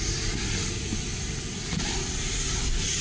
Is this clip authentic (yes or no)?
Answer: yes